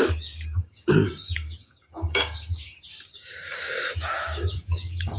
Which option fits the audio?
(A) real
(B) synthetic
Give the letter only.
B